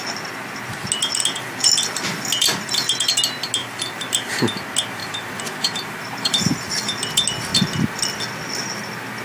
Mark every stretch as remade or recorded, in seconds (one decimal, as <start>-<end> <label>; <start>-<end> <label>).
0.0-3.6 recorded; 3.6-4.3 remade; 4.3-5.0 recorded; 5.0-6.7 remade; 6.7-9.2 recorded